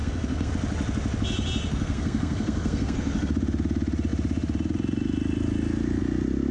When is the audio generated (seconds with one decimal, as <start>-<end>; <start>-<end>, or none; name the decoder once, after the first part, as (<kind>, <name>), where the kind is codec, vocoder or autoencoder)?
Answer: 0.0-0.5 (codec, SNAC); 1.7-3.3